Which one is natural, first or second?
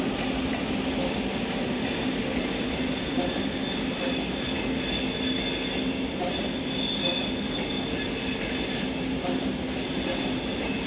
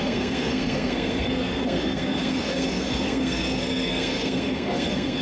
first